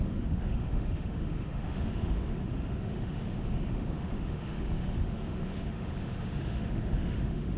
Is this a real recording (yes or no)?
no